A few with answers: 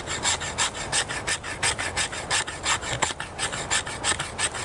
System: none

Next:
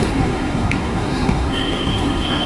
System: codec, SNAC